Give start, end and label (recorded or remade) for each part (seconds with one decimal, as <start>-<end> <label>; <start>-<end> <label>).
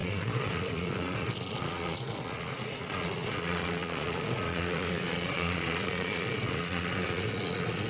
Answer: 0.0-7.9 remade